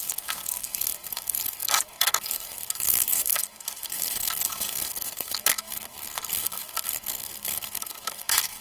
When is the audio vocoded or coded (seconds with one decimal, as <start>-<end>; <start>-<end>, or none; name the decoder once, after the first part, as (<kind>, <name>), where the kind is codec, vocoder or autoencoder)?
0.0-8.6 (codec, SNAC)